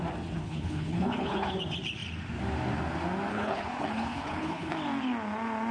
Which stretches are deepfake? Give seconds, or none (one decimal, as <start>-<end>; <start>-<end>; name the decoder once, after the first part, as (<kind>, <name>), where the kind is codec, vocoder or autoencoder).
0.4-1.6 (codec, HILCodec); 3.3-4.7